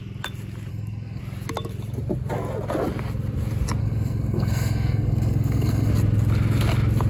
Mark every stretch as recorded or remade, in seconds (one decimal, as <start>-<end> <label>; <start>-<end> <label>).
0.0-0.7 recorded; 0.7-1.2 remade; 1.2-3.8 recorded; 3.8-5.9 remade; 5.9-7.1 recorded